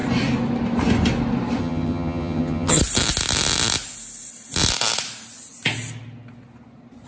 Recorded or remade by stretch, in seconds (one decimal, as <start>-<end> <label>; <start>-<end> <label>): 0.0-1.6 recorded; 1.6-2.8 remade; 2.8-7.1 recorded